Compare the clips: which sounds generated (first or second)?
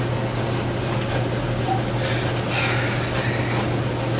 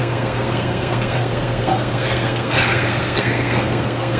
second